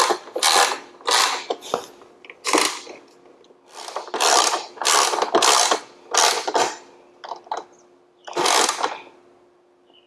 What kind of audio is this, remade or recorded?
recorded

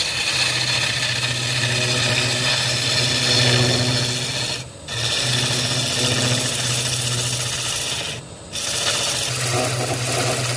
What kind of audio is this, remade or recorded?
recorded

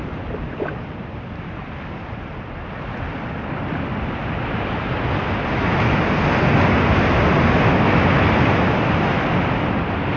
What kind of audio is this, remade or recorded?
recorded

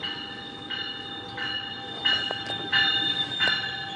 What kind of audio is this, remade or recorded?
recorded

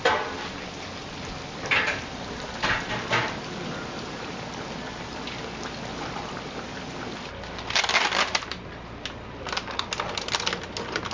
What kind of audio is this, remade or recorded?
recorded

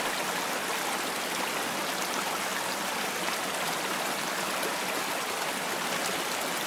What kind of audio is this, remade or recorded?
recorded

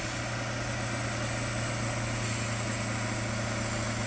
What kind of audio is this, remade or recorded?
recorded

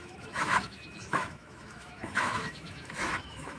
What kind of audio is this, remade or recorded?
remade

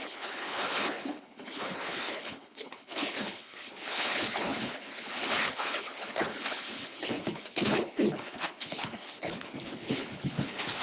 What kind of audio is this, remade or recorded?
remade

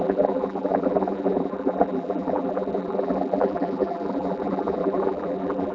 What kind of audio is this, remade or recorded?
remade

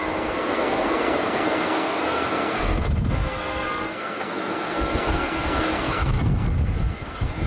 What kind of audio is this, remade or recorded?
remade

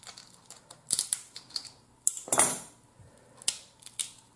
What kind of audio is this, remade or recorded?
recorded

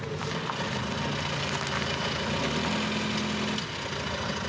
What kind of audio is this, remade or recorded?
recorded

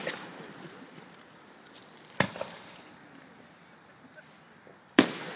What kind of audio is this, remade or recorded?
remade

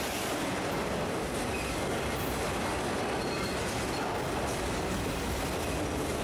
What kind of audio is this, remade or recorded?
recorded